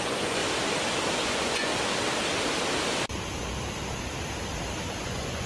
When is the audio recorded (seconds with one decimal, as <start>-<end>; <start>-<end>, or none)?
0.4-1.2; 1.7-5.0